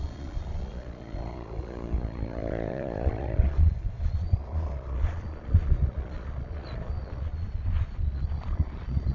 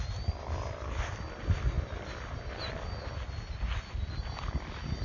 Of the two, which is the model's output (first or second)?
first